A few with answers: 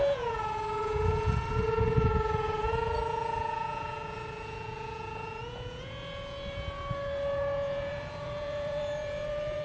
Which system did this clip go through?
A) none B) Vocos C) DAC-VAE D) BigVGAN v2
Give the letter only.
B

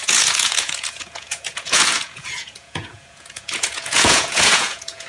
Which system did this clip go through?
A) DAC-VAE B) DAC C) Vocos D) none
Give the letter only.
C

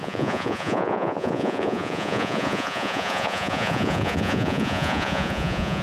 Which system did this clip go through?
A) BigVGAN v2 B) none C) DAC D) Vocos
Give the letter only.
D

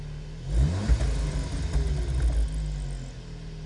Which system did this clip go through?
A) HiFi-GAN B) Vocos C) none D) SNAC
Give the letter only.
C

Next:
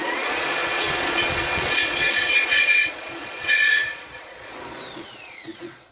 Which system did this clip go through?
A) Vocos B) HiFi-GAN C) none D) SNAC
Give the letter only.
A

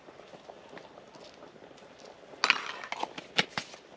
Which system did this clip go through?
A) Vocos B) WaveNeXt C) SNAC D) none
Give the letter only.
D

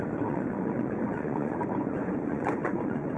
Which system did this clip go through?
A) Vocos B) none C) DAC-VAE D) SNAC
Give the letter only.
A